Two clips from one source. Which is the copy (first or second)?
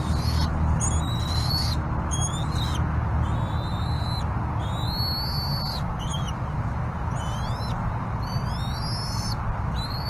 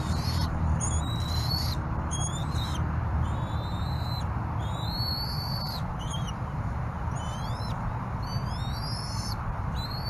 second